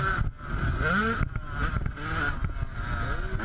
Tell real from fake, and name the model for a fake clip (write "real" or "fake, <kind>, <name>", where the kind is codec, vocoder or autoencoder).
real